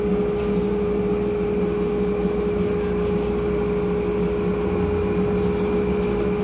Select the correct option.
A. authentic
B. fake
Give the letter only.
A